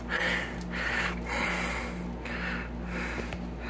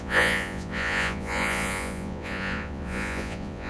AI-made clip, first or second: second